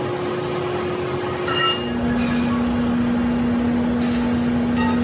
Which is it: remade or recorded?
recorded